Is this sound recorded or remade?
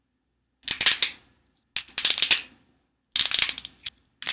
recorded